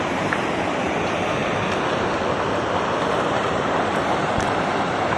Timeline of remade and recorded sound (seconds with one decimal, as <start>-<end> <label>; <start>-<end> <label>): 0.0-1.4 remade; 1.4-3.3 recorded; 3.3-5.2 remade